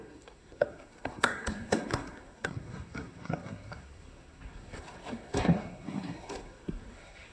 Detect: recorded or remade remade